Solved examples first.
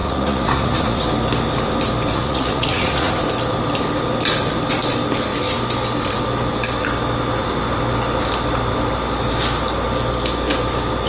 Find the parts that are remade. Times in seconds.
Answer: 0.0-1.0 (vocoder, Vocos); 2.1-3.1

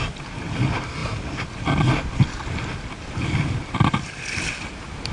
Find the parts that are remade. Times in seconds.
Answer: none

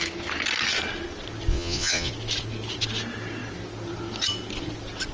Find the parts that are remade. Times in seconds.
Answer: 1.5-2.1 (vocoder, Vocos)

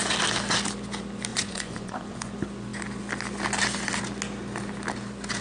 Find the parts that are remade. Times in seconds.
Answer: 1.3-2.3 (vocoder, Vocos)